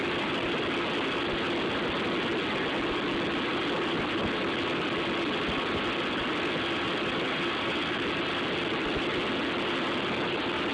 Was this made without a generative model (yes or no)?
yes